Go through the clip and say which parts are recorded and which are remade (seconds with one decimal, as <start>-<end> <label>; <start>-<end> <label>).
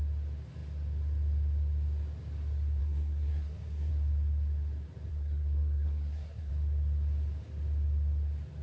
0.0-2.8 recorded; 2.8-3.9 remade; 3.9-5.1 recorded; 5.1-6.5 remade; 6.5-8.6 recorded